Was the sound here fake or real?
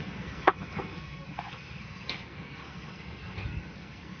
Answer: fake